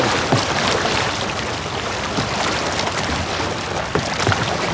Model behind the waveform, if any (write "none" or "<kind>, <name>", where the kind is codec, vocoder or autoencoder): none